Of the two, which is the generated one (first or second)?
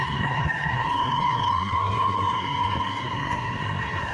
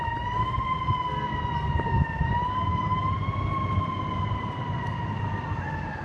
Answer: first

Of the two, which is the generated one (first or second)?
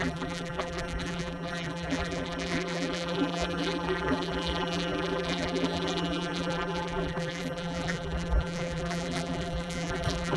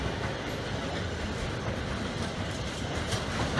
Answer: first